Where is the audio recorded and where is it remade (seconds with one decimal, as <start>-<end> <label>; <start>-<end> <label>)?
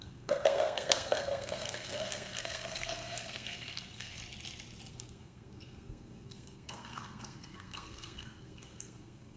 0.0-4.2 remade; 4.2-4.9 recorded; 4.9-9.4 remade